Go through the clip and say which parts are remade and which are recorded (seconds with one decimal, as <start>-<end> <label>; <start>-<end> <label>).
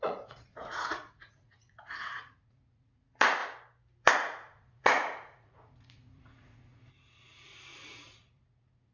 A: 0.0-3.4 remade; 3.4-4.1 recorded; 4.1-8.9 remade